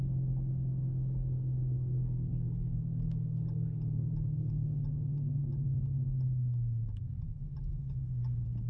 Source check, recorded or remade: remade